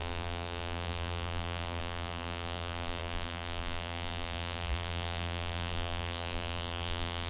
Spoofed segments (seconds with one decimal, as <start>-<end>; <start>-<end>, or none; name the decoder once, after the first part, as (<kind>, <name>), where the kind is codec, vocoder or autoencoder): 0.0-7.3 (vocoder, BigVGAN v2)